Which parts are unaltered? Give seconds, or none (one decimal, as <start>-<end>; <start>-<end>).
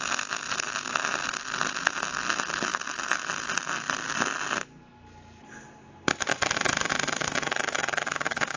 0.0-8.6